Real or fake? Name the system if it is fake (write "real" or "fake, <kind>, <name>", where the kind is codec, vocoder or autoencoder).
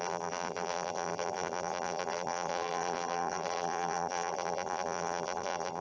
fake, vocoder, BigVGAN v2